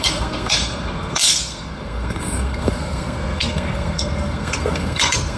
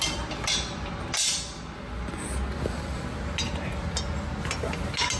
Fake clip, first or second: first